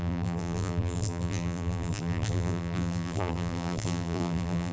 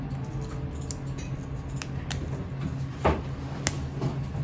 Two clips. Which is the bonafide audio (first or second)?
second